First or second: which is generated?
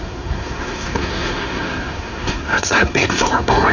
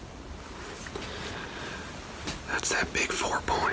first